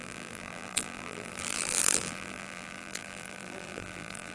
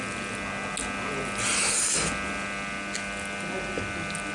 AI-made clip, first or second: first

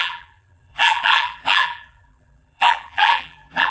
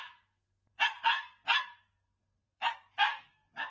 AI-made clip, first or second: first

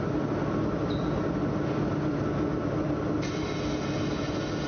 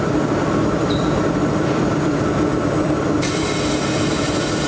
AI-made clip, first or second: second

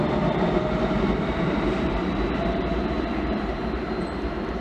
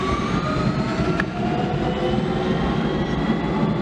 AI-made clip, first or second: first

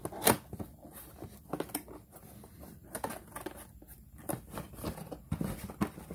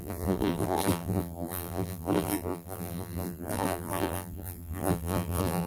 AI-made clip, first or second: second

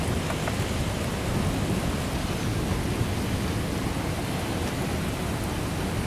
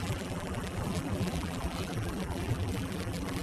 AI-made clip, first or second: second